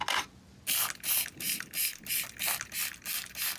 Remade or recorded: recorded